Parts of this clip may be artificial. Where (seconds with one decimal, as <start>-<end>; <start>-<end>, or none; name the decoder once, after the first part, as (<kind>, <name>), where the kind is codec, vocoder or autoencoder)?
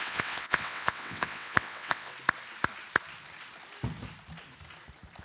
0.0-2.1 (vocoder, WaveNeXt)